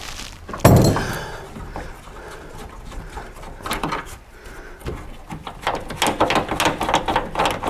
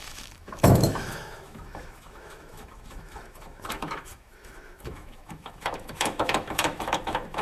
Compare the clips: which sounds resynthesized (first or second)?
second